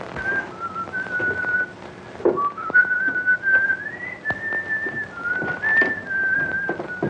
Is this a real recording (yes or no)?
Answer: yes